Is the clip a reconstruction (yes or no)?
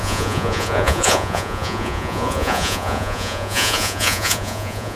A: yes